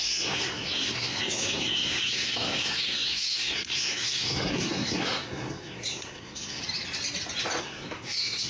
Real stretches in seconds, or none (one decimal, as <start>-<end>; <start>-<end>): 6.6-7.6